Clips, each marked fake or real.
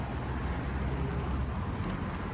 real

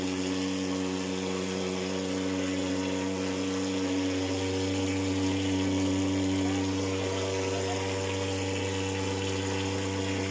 real